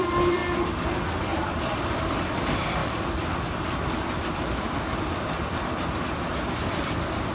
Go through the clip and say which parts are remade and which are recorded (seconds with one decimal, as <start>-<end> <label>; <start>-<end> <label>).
0.0-0.4 remade; 0.4-1.8 recorded; 1.8-7.3 remade

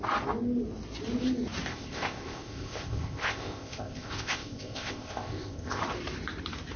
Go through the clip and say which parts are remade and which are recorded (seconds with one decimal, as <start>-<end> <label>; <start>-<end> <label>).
0.0-1.7 recorded; 1.7-5.8 remade; 5.8-6.8 recorded

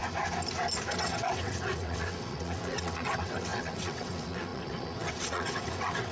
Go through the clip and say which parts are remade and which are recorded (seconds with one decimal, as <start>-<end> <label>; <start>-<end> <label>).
0.0-0.9 recorded; 0.9-6.1 remade

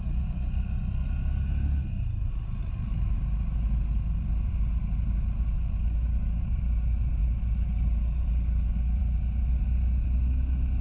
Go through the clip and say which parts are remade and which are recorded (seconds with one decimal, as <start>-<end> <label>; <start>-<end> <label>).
0.0-10.8 recorded